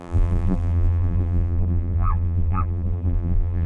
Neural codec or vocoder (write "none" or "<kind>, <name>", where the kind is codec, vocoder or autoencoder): vocoder, BigVGAN v2